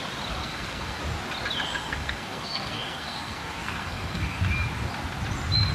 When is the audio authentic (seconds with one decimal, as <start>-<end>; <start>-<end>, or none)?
0.0-0.4; 1.0-1.8; 4.4-5.7